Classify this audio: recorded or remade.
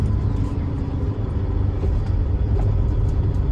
recorded